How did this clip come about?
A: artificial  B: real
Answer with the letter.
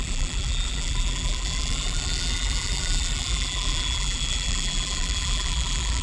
A